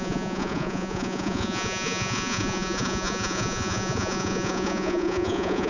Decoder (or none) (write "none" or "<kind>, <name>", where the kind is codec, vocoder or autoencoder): vocoder, Vocos